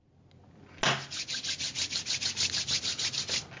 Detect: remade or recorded recorded